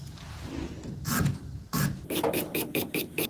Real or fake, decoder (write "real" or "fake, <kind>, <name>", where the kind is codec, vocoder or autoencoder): real